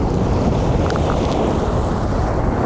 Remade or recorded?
recorded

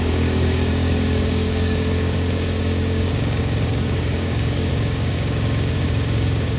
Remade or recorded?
remade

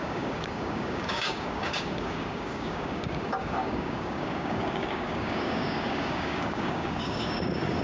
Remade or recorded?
remade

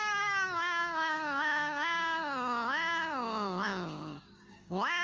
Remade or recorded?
remade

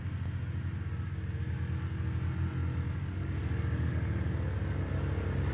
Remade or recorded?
recorded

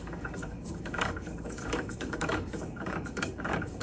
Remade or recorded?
remade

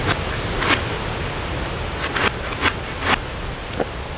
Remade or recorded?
recorded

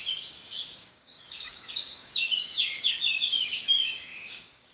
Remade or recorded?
remade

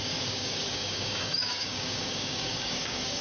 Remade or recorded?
remade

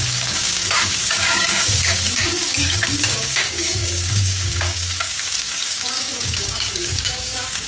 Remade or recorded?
remade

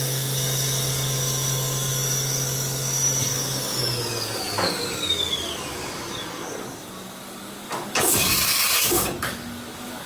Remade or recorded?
remade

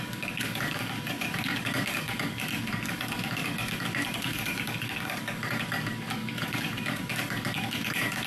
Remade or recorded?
remade